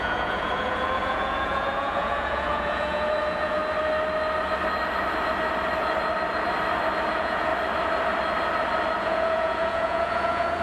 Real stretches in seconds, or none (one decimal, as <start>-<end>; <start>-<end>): 3.6-7.1; 7.5-9.0